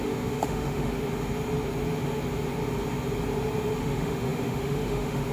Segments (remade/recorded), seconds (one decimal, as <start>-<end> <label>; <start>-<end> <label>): 0.0-0.9 remade; 0.9-3.8 recorded; 3.8-5.3 remade